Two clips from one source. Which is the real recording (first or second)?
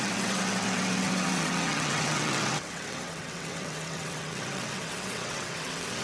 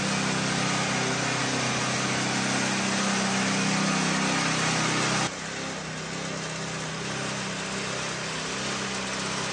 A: second